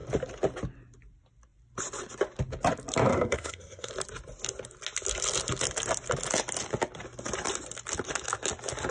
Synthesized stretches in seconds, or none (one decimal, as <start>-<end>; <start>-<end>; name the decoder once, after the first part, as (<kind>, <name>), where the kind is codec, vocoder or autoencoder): 3.1-3.9 (codec, SNAC)